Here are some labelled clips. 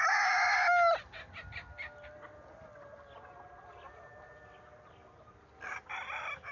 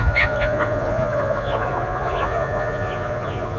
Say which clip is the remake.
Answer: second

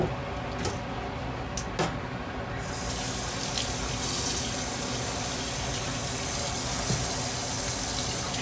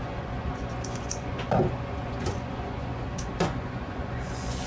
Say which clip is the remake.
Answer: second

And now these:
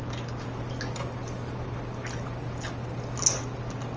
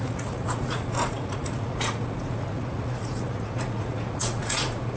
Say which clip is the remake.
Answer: second